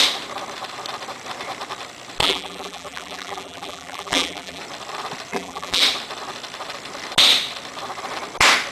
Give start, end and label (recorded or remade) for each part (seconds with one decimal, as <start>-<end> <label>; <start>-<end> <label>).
0.0-2.2 recorded; 2.2-4.6 remade; 4.6-5.3 recorded; 5.3-5.8 remade; 5.8-8.7 recorded